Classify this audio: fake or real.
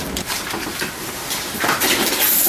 fake